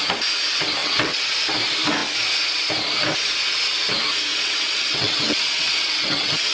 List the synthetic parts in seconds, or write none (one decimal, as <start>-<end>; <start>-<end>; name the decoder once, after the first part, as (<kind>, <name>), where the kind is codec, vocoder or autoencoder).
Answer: 0.8-1.4 (vocoder, WaveNeXt); 4.3-6.5